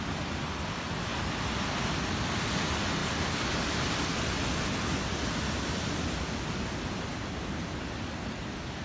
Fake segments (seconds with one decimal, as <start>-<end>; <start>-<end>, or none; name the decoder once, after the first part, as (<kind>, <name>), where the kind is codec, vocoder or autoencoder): none